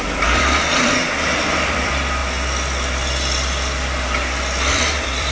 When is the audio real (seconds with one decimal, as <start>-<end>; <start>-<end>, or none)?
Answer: 2.2-4.7